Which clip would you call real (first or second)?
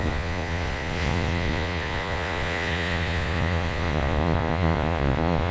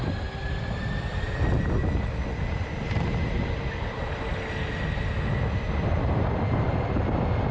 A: second